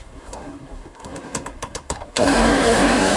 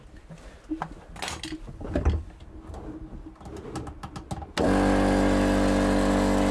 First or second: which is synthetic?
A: first